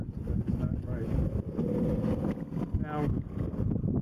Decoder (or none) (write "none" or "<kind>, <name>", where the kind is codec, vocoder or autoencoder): none